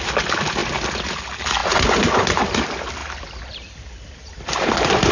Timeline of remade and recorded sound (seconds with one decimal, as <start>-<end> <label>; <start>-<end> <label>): 0.0-1.6 recorded; 1.6-2.4 remade; 2.4-3.0 recorded; 3.0-5.1 remade